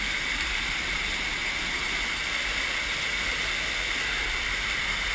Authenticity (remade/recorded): recorded